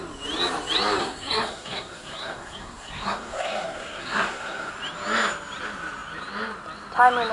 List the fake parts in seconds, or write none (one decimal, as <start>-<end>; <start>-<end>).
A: 1.0-4.7